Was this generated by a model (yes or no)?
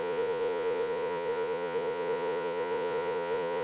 yes